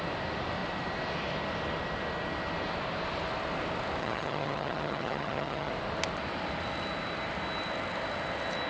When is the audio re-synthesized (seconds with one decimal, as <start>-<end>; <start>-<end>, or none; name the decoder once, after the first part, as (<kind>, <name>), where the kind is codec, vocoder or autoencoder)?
4.0-5.7 (vocoder, HiFi-GAN)